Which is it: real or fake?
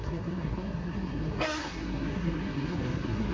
fake